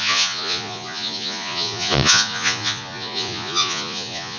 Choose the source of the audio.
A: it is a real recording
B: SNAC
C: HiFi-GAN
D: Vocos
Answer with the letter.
D